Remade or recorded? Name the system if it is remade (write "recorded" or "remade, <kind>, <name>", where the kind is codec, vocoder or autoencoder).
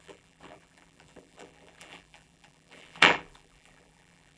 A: remade, vocoder, BigVGAN v2